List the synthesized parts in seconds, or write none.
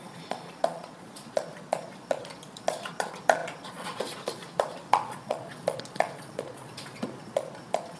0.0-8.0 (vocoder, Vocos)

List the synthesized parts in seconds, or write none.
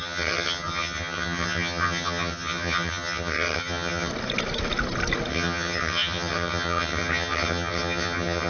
0.0-4.1 (vocoder, HiFi-GAN); 5.3-8.5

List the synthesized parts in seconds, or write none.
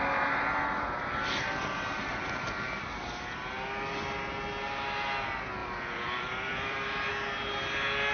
5.6-7.1 (vocoder, BigVGAN v2)